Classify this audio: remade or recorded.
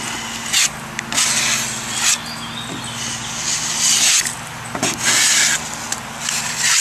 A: recorded